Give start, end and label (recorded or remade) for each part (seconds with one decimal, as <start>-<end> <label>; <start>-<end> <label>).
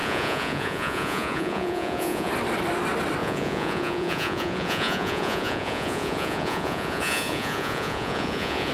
0.0-2.3 remade; 2.3-3.2 recorded; 3.2-8.7 remade